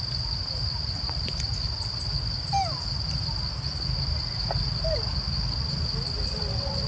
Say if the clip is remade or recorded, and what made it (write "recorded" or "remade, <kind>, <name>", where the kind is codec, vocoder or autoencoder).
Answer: recorded